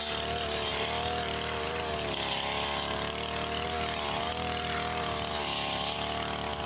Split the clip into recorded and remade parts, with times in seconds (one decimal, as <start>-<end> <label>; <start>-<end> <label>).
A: 0.0-6.7 recorded